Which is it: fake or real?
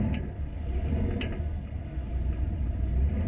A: real